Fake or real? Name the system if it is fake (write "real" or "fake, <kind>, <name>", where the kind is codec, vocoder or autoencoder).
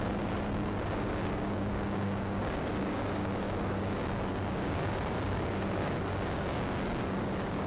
fake, codec, DAC